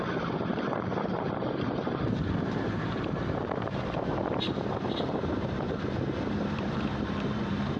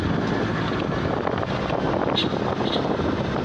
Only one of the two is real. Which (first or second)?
second